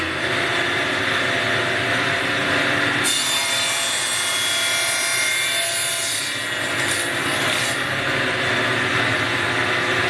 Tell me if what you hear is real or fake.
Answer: real